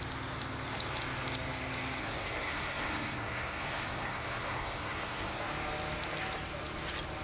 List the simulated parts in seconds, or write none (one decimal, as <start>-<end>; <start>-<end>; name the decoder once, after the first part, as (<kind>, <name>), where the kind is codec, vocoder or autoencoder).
2.0-5.4 (codec, SNAC)